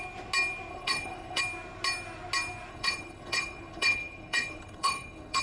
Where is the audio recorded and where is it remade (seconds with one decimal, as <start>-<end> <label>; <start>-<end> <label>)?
0.0-0.7 recorded; 0.7-1.4 remade; 1.4-2.7 recorded; 2.7-5.4 remade